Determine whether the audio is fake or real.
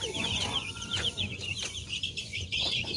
fake